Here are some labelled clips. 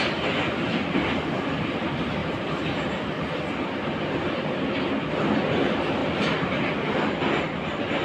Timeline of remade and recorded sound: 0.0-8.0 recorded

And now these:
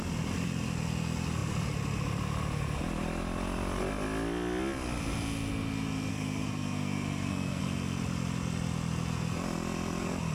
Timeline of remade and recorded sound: 0.0-6.1 recorded; 6.1-7.6 remade; 7.6-10.3 recorded

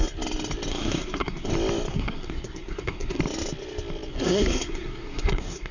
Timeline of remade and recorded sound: 0.0-0.7 recorded; 0.7-1.5 remade; 1.5-1.9 recorded; 1.9-3.2 remade; 3.2-4.1 recorded; 4.1-5.7 remade

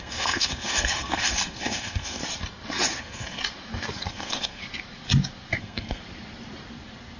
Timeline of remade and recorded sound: 0.0-2.2 remade; 2.2-3.0 recorded; 3.0-3.4 remade; 3.4-4.1 recorded; 4.1-4.6 remade; 4.6-5.6 recorded; 5.6-6.0 remade; 6.0-7.2 recorded

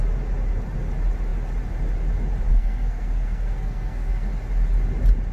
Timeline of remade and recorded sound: 0.0-2.5 recorded; 2.5-4.3 remade; 4.3-5.3 recorded

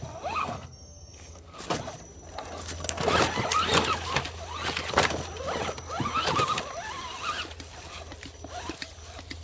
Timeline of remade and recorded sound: 0.0-0.4 recorded; 0.4-1.6 remade; 1.6-9.4 recorded

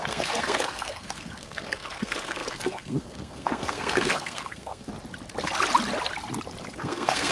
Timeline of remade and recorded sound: 0.0-4.9 remade; 4.9-6.7 recorded; 6.7-7.3 remade

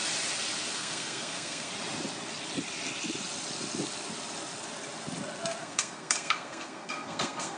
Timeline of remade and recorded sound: 0.0-0.7 recorded; 0.7-1.7 remade; 1.7-5.6 recorded; 5.6-7.6 remade